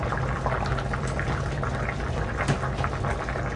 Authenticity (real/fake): real